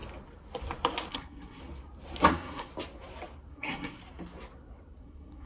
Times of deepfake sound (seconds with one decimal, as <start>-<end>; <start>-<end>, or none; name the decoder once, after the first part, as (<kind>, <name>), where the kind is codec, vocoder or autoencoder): 1.1-1.6 (codec, SNAC); 2.3-2.7; 3.5-4.0; 5.0-5.5